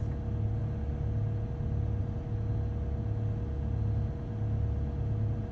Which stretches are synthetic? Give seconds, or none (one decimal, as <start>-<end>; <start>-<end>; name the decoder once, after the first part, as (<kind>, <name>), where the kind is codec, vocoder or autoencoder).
none